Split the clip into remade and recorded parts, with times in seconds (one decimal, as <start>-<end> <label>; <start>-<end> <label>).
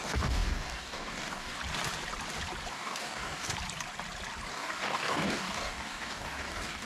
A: 0.0-1.6 remade; 1.6-2.7 recorded; 2.7-3.5 remade; 3.5-4.5 recorded; 4.5-6.9 remade